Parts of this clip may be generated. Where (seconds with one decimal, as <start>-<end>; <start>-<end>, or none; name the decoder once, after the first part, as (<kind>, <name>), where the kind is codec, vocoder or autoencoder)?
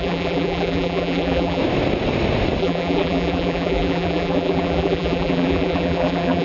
0.0-1.6 (vocoder, BigVGAN v2); 2.6-6.4